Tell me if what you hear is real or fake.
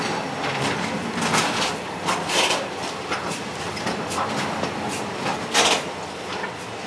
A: real